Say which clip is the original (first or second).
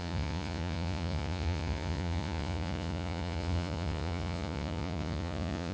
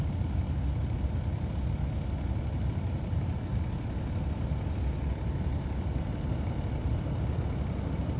second